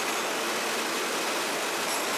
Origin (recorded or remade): recorded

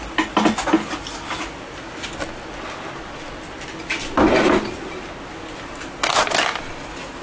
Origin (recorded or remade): recorded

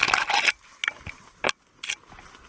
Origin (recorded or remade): recorded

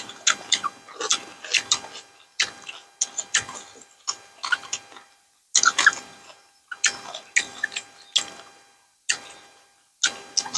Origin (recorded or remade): recorded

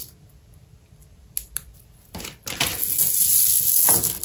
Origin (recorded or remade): recorded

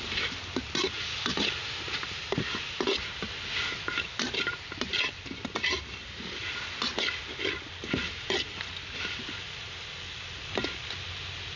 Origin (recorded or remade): recorded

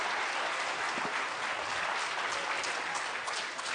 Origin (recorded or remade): recorded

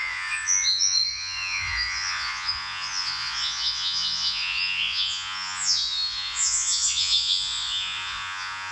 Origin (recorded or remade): remade